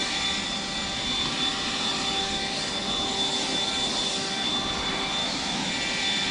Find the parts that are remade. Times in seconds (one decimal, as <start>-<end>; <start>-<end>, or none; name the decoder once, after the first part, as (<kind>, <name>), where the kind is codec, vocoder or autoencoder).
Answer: 5.2-5.7 (autoencoder, DAC-VAE)